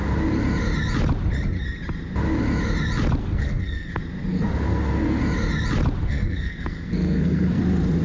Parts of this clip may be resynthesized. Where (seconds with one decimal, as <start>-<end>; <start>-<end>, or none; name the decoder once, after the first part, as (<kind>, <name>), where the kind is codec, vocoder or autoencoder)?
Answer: 3.2-4.0 (codec, SNAC); 4.7-5.2; 6.0-7.6